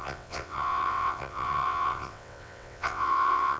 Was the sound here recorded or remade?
remade